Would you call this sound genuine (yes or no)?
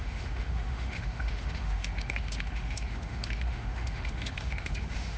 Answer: no